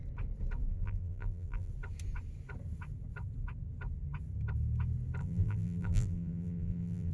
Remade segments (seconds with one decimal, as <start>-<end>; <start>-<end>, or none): 0.7-1.7; 5.2-7.1